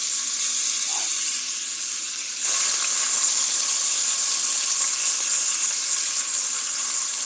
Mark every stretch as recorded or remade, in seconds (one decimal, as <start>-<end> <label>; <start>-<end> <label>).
0.0-4.0 recorded; 4.0-4.5 remade; 4.5-7.3 recorded